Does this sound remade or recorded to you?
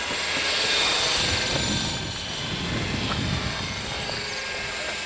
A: recorded